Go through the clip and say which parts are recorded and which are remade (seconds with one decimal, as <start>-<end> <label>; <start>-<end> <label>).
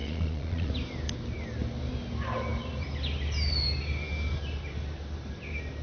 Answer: 0.0-0.7 remade; 0.7-5.8 recorded